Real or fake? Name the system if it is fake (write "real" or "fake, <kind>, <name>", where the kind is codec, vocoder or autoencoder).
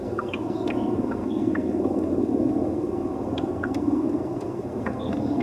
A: fake, codec, SNAC